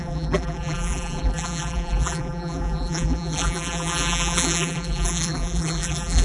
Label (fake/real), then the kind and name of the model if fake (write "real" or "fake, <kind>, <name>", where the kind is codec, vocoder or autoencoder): fake, vocoder, BigVGAN v2